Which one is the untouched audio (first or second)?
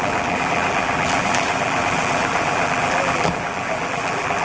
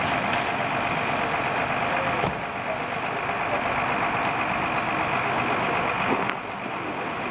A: second